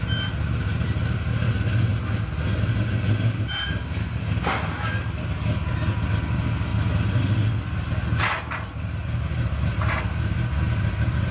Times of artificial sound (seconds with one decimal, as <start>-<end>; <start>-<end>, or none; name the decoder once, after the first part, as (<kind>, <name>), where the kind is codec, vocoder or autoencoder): none